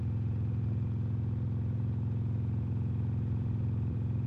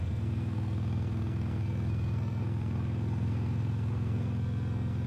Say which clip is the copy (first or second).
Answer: second